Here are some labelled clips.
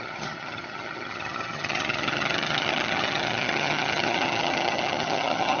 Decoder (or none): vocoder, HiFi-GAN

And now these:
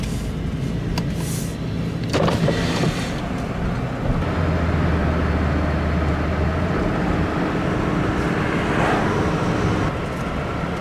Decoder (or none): none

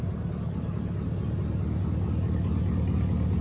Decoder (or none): none